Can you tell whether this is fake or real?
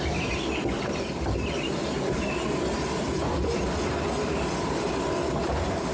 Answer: real